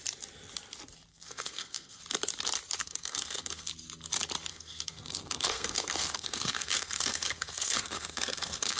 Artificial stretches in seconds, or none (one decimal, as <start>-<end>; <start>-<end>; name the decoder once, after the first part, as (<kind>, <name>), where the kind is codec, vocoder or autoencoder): 1.1-2.0 (codec, SNAC); 2.8-3.7; 4.5-8.8